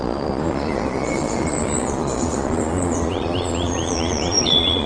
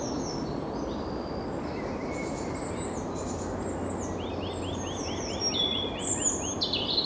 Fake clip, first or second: first